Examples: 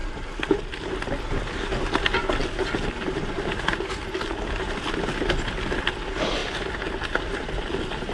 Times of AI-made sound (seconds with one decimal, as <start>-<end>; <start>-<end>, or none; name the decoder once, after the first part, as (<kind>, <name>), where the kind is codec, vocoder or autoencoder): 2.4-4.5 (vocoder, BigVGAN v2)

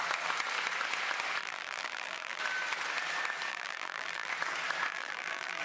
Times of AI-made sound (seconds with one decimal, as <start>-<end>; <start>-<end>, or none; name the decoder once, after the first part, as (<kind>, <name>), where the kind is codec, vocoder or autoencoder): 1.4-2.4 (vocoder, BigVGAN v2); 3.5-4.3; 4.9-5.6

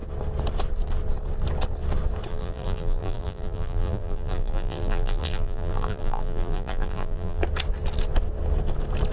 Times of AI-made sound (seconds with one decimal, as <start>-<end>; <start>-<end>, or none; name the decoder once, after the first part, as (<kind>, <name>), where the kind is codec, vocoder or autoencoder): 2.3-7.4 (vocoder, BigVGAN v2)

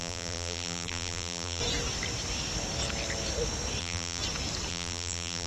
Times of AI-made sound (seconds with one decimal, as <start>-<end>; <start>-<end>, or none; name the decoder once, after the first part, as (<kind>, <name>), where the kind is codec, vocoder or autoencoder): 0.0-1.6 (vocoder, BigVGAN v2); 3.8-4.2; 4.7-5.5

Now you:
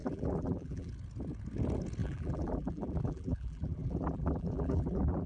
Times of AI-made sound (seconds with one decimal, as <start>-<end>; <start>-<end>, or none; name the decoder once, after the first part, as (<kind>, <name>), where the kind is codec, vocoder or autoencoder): 0.0-0.9 (vocoder, BigVGAN v2); 2.0-5.3

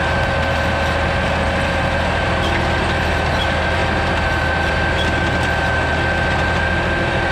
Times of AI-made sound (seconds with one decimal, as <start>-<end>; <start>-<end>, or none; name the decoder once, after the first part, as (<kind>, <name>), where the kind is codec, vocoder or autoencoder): none